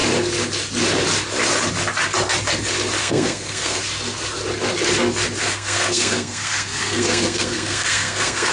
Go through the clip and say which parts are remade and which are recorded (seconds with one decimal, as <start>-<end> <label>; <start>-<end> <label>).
0.0-3.0 recorded; 3.0-3.8 remade; 3.8-5.4 recorded; 5.4-8.5 remade